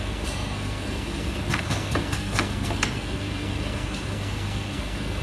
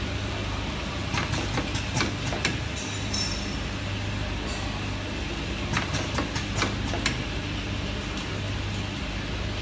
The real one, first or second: second